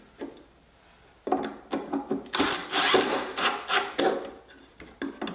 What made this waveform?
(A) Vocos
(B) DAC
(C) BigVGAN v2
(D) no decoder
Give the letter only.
D